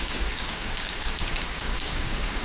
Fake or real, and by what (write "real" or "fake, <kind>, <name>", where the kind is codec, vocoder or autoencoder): fake, codec, DAC